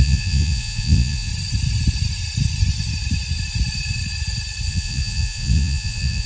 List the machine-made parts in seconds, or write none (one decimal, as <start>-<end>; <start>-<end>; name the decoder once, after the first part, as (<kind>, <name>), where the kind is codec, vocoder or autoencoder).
0.0-1.3 (vocoder, Vocos); 4.7-6.3